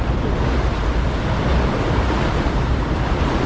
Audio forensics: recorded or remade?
recorded